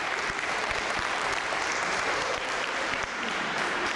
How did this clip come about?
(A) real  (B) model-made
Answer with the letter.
B